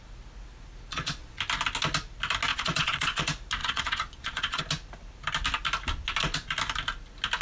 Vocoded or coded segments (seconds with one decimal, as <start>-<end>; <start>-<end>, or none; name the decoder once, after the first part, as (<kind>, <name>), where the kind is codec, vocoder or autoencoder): 0.9-1.4 (vocoder, Vocos); 2.5-3.2; 3.6-4.6